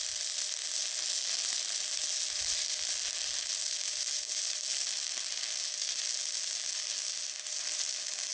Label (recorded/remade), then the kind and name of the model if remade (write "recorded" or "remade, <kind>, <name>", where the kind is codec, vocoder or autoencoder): recorded